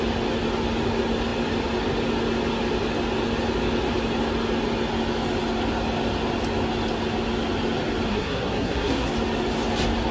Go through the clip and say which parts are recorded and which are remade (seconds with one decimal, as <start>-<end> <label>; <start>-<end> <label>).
0.0-8.1 recorded; 8.1-9.1 remade; 9.1-10.1 recorded